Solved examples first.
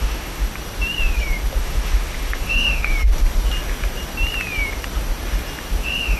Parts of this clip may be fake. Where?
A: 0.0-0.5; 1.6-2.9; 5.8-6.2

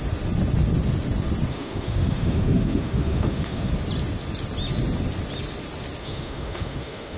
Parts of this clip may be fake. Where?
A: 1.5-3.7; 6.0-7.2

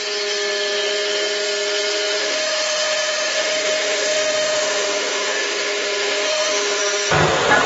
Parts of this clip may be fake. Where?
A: 2.2-6.8

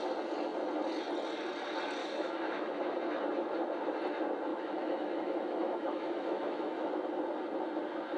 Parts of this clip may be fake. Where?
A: 2.0-2.8; 4.5-6.9

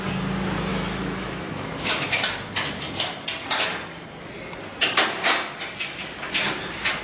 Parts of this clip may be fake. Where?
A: 0.7-2.2

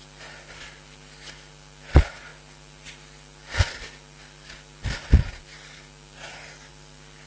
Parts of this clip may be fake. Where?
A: none

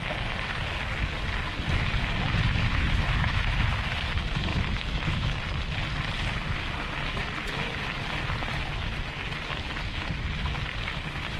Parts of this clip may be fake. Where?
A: 2.7-3.6; 4.5-5.4

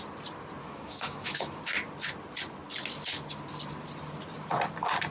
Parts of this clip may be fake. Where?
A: 0.6-1.6